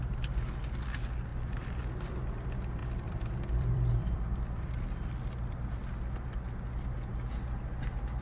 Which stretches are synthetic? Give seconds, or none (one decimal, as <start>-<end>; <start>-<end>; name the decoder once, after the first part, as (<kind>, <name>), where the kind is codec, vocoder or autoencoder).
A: 1.3-2.2 (vocoder, BigVGAN v2); 2.8-5.8